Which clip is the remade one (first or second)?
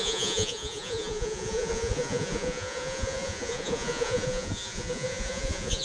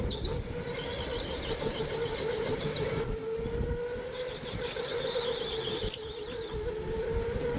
first